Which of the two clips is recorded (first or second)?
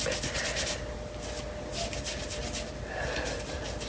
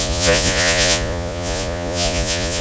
first